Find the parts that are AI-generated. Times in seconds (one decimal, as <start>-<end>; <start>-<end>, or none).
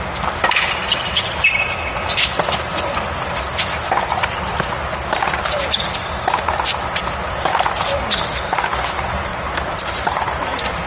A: none